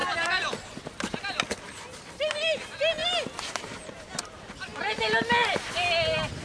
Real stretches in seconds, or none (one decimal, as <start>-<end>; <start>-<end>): 0.0-6.4